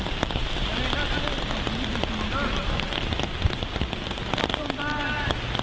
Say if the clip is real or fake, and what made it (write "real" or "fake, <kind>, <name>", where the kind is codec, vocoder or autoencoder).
real